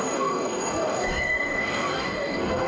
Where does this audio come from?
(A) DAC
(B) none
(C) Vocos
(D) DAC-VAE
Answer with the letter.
A